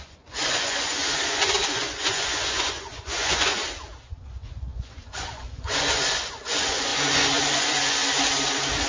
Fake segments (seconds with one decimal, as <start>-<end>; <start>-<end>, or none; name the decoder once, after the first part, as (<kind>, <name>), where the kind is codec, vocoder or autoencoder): 0.0-3.5 (vocoder, Vocos); 4.0-8.0